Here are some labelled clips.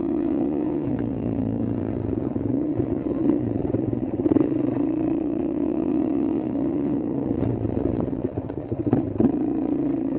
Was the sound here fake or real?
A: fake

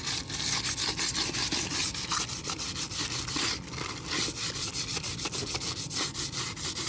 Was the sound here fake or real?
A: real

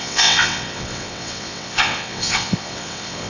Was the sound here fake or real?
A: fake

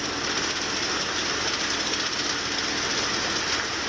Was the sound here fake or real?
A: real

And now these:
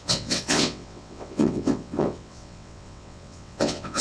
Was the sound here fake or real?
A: fake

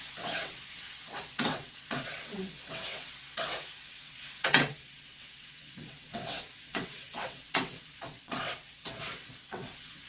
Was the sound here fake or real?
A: fake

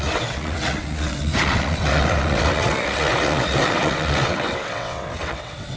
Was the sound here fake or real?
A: fake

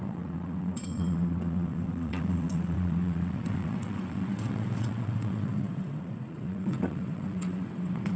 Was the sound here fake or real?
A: fake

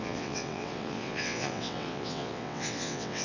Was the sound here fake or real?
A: fake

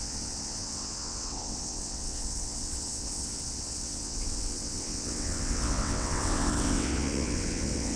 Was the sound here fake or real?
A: fake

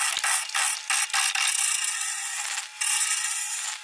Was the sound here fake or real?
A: real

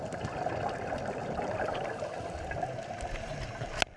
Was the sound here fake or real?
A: real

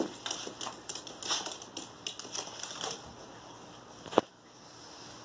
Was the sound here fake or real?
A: real